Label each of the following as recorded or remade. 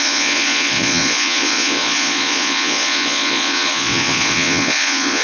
remade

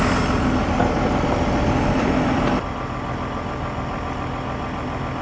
recorded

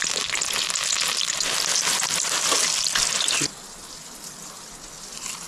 recorded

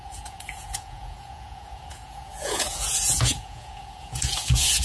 remade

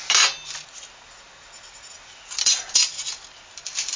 recorded